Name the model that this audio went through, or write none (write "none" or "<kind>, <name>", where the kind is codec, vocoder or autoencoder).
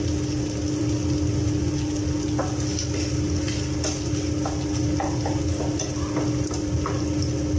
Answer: none